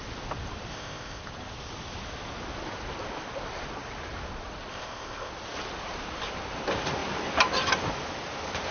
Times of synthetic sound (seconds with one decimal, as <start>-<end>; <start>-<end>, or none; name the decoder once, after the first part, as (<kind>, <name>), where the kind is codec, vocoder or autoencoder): 0.7-1.2 (codec, ZipCodec); 4.7-5.3